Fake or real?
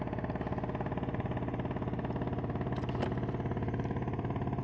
real